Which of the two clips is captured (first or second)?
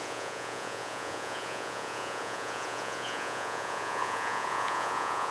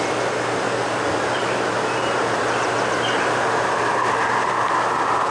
second